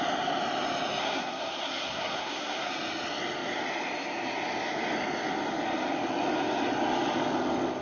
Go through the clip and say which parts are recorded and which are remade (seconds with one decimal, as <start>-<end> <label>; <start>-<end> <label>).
0.0-1.0 recorded; 1.0-2.7 remade; 2.7-7.8 recorded